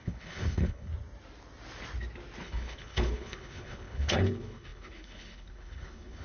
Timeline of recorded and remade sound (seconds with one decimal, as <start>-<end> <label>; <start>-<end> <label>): 0.0-0.9 remade; 0.9-2.4 recorded; 2.4-6.2 remade